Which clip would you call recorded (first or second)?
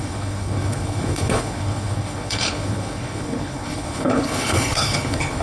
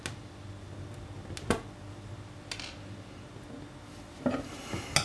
second